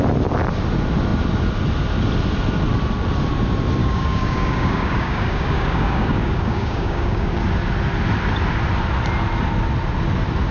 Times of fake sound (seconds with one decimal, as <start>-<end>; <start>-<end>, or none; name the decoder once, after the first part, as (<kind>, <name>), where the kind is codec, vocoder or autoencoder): 3.8-7.4 (codec, DAC)